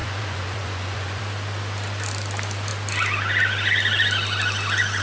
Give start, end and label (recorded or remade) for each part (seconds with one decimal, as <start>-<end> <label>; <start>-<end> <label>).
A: 0.0-1.2 remade; 1.2-5.0 recorded